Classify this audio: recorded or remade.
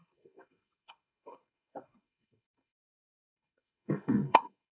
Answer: remade